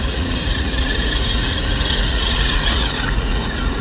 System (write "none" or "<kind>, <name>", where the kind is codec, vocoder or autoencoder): vocoder, Vocos